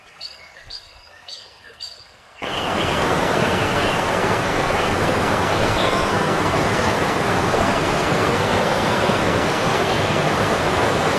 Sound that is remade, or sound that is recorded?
remade